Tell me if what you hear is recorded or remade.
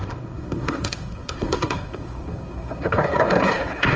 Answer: remade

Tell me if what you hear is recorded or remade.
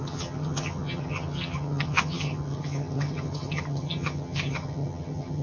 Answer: remade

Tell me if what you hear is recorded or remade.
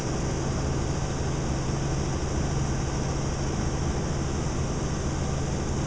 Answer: recorded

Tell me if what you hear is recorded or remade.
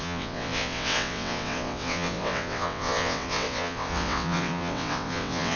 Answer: remade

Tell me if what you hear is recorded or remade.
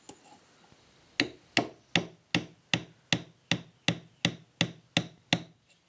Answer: recorded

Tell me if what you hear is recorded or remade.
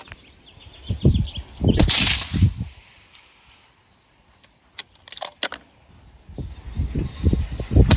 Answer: recorded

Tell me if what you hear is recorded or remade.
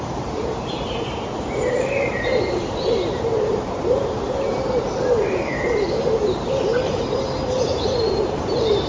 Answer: remade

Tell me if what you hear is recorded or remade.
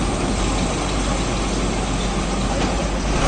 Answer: recorded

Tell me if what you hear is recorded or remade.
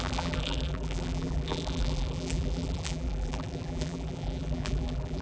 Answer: remade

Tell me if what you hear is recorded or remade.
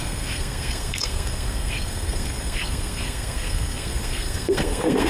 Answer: remade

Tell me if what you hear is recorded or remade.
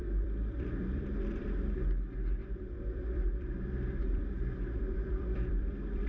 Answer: remade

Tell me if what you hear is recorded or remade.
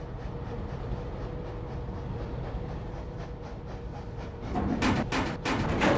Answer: recorded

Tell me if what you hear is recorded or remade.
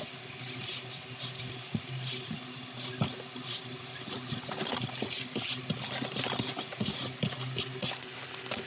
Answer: recorded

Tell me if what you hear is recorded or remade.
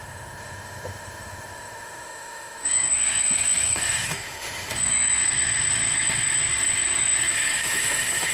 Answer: remade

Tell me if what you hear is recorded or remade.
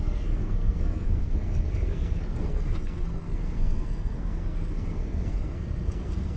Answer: remade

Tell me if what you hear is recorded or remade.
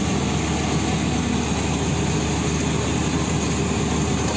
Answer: recorded